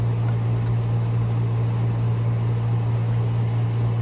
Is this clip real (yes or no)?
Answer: yes